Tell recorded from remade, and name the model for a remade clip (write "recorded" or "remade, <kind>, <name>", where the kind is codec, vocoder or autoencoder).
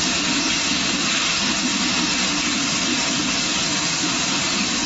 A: remade, vocoder, BigVGAN v2